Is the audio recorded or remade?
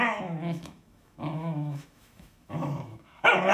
remade